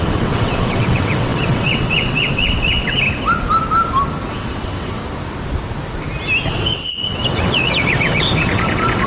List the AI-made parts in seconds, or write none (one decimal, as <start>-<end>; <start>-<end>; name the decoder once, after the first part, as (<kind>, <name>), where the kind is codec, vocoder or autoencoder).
0.0-3.0 (vocoder, WaveNeXt); 4.3-5.0; 6.5-9.1